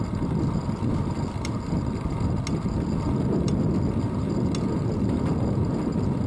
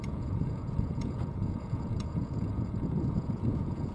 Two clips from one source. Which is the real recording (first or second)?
first